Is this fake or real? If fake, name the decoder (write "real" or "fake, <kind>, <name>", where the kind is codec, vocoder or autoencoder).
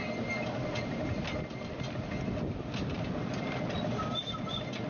real